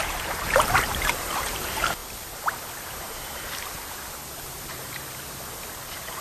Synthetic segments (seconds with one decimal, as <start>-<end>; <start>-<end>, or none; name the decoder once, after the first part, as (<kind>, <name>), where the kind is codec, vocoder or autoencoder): 0.0-2.0 (vocoder, BigVGAN v2); 3.9-6.2